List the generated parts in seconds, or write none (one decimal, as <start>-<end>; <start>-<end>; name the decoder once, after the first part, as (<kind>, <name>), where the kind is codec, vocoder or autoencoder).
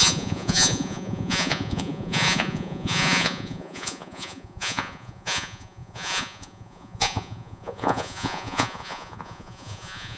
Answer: 0.0-10.2 (vocoder, Vocos)